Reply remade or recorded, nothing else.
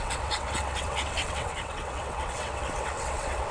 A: remade